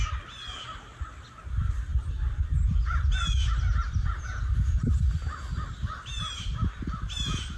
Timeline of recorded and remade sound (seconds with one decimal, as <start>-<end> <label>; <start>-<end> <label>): 0.0-7.6 recorded